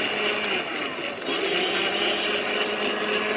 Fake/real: real